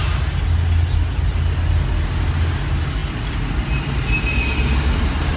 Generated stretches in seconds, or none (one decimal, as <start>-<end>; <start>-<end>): none